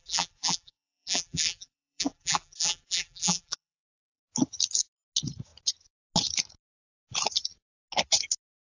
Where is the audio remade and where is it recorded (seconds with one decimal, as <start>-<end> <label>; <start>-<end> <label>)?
0.0-4.2 remade; 4.2-8.7 recorded